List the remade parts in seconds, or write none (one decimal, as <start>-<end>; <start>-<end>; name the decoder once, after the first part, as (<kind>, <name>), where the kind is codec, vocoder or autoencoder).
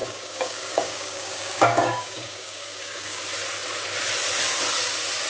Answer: 0.0-3.2 (codec, DAC)